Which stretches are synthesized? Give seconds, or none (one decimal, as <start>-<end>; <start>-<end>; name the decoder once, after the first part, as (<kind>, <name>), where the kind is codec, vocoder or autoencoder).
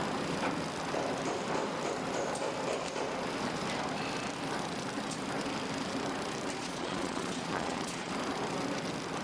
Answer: 6.6-8.1 (vocoder, Vocos)